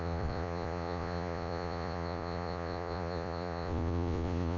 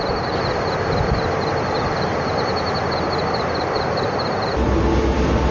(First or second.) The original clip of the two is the second